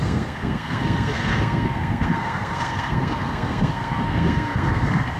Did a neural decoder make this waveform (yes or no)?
yes